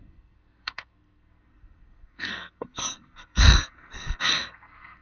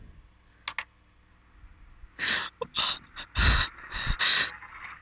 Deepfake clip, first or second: first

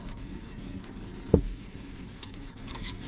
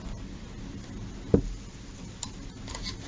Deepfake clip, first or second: first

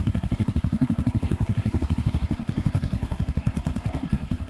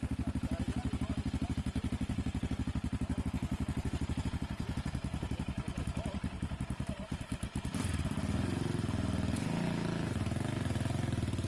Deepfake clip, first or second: first